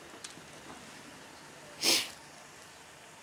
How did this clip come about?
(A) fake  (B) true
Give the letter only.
B